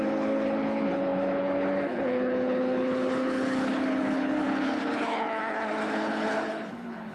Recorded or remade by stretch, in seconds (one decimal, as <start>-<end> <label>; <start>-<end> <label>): 0.0-7.1 remade